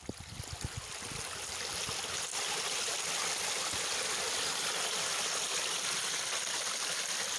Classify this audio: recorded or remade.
recorded